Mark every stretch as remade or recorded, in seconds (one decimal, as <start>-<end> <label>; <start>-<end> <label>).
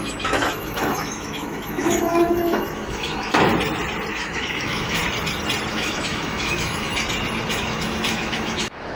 0.0-3.5 remade; 3.5-4.1 recorded; 4.1-5.0 remade; 5.0-5.7 recorded; 5.7-6.9 remade; 6.9-7.5 recorded; 7.5-9.0 remade